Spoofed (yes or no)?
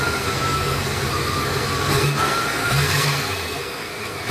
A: yes